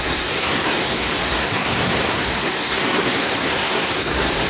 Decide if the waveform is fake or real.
fake